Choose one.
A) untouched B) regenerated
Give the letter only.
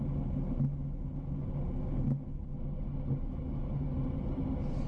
A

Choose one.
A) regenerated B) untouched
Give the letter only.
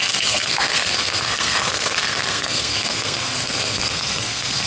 A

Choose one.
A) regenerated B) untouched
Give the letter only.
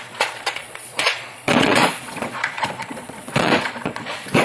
A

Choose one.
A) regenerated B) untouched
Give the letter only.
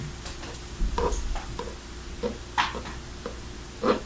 B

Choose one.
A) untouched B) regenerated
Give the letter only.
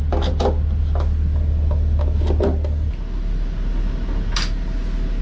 A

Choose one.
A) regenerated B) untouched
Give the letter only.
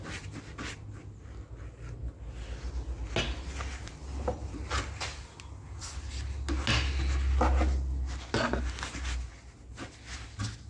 B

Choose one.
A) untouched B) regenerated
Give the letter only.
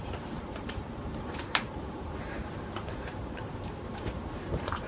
B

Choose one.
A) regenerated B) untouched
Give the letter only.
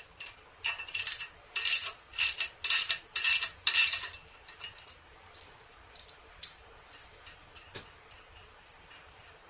A